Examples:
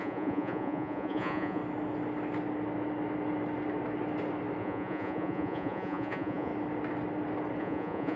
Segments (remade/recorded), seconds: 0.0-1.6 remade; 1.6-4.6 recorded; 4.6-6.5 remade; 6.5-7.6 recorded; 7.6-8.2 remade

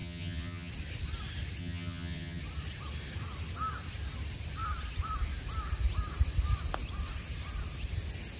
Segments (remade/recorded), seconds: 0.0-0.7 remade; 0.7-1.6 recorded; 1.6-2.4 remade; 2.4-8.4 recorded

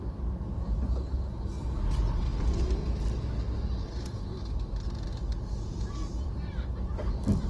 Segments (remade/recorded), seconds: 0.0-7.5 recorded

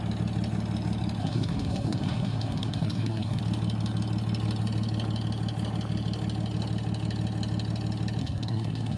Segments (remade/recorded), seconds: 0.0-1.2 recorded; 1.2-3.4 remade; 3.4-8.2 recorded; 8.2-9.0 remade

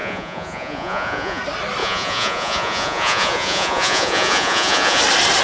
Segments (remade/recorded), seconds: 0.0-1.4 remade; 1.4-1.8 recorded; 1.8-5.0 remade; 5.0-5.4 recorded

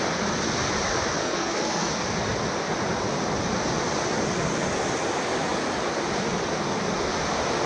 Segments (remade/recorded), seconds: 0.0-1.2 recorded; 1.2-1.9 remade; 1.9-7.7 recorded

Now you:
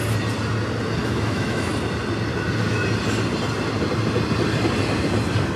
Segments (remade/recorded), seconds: 0.0-1.0 recorded; 1.0-1.7 remade; 1.7-5.6 recorded